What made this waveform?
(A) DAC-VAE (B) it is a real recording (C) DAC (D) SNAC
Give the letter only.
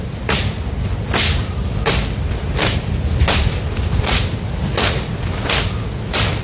B